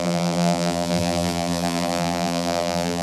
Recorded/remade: remade